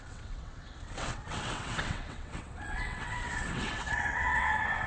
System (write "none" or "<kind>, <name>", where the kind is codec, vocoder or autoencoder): vocoder, WaveNeXt